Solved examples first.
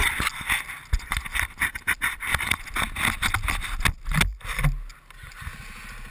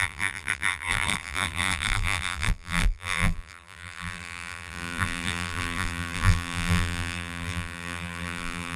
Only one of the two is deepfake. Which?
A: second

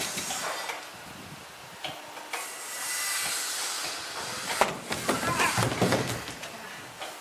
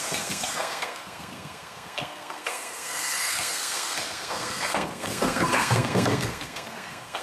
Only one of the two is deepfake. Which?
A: second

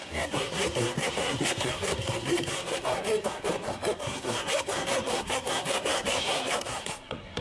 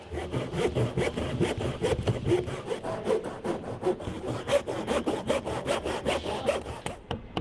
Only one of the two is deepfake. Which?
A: first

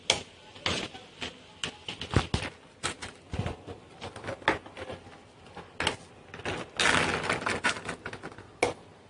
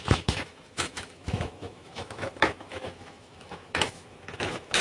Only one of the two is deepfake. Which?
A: second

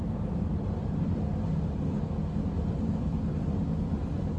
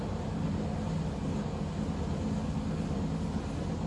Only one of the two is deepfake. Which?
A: first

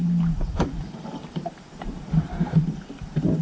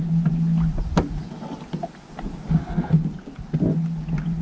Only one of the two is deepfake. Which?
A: first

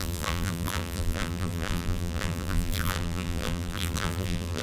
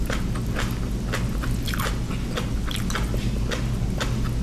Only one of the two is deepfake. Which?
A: first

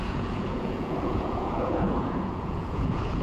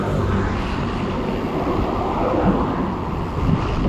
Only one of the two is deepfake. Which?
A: first